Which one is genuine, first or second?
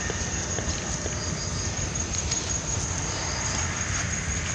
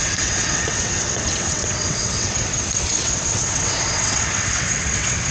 first